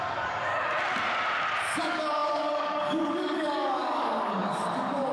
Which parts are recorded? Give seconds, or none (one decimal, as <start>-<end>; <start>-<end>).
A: 0.5-1.8